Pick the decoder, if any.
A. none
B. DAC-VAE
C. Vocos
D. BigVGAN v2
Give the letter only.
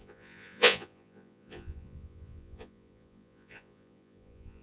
C